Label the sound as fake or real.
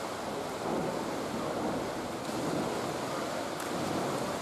real